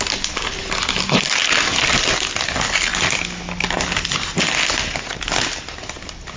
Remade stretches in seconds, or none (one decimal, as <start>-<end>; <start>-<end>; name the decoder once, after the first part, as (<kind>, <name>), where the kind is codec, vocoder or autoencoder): none